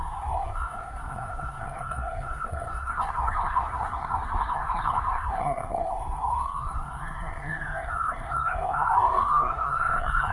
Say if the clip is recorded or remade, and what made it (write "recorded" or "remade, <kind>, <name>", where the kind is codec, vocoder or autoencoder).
remade, codec, SNAC